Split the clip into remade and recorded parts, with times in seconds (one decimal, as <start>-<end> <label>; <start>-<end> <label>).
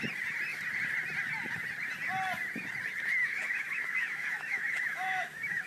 0.0-3.2 recorded; 3.2-5.7 remade